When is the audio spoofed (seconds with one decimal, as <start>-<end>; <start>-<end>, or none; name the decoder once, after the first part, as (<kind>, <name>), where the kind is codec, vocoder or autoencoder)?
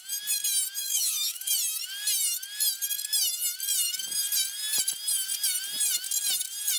0.8-1.5 (autoencoder, DAC-VAE)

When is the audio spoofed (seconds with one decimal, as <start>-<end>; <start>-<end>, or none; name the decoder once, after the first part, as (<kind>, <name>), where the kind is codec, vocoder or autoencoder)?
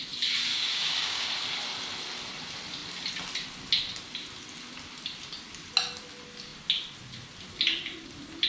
0.5-1.3 (codec, DAC)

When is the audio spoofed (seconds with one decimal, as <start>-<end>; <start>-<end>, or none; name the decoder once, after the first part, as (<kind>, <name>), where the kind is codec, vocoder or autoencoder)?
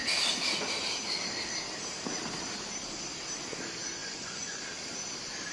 4.0-4.6 (vocoder, Vocos)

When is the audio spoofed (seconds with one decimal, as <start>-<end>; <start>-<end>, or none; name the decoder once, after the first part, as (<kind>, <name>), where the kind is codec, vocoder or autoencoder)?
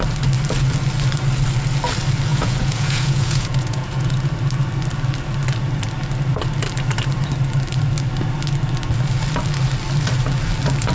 2.3-4.3 (vocoder, Vocos)